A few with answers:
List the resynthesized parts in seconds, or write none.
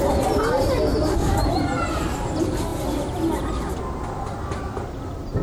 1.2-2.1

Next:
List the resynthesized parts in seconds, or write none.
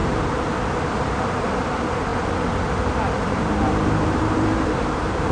0.8-5.3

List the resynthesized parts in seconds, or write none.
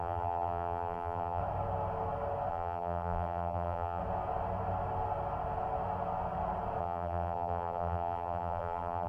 0.0-1.4; 2.5-4.0; 6.8-9.1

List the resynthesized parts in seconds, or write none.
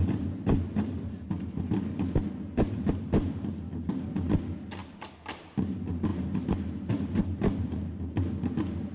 0.0-1.6; 6.1-6.9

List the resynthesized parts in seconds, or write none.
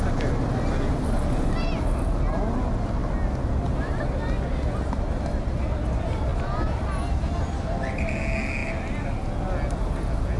none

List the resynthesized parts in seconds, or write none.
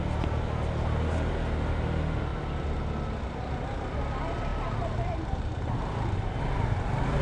4.5-6.4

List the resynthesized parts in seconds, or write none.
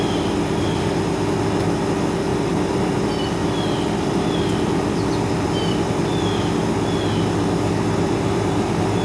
2.3-5.9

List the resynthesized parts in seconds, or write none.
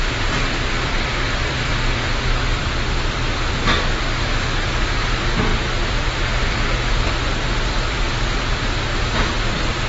0.5-3.2